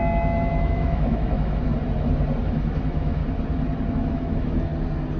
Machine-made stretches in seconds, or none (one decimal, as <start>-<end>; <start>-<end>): 0.0-1.7; 2.4-3.2; 3.9-4.7